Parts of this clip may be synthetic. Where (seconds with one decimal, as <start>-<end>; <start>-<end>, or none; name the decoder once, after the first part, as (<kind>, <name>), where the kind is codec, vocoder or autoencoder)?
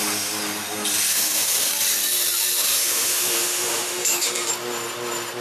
1.1-1.7 (autoencoder, DAC-VAE); 2.6-4.5